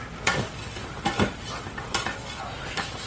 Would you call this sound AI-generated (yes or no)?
no